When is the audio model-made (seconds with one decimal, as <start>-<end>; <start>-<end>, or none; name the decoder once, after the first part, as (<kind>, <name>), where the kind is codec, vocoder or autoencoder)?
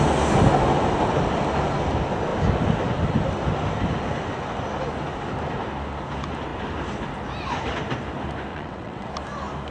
8.5-9.1 (vocoder, WaveNeXt)